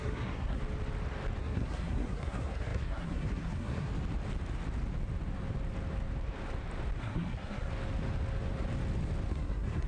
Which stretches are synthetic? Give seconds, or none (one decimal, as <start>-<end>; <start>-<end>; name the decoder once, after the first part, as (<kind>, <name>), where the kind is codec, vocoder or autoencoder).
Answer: 0.0-0.6 (codec, SNAC); 1.4-3.9; 7.0-7.7; 9.3-9.9